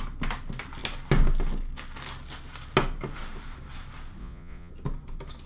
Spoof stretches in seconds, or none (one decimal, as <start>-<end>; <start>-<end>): 4.2-4.7

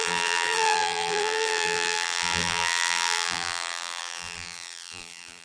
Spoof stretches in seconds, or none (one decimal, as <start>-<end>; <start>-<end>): 0.0-5.4

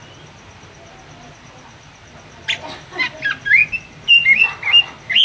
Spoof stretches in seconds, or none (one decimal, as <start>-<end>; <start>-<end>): none

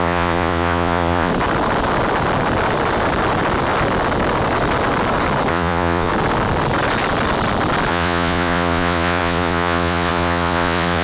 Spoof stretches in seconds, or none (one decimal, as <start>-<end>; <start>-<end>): 0.0-1.3; 5.5-6.1; 7.9-11.0

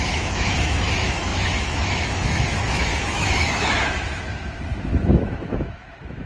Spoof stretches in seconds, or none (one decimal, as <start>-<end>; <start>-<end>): 0.0-6.3

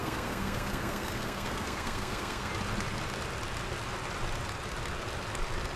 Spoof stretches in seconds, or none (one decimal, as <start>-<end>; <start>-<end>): 0.0-2.5

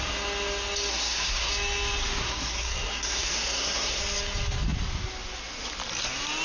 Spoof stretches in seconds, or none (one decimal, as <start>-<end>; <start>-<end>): 0.9-1.5; 2.2-4.0

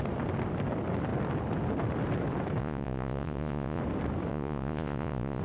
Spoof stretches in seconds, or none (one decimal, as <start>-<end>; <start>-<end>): 2.6-3.8; 4.3-5.4